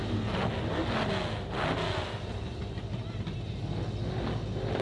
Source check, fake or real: real